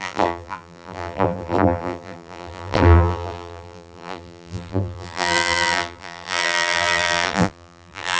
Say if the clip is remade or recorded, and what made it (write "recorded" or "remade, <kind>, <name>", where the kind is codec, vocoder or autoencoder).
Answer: remade, vocoder, BigVGAN v2